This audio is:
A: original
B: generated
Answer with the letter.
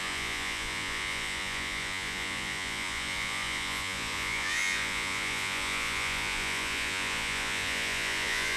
B